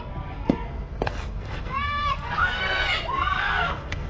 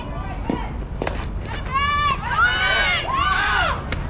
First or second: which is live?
second